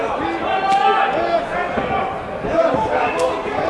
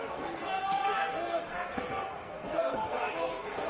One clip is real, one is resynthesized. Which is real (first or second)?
first